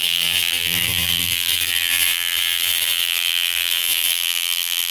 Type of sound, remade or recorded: remade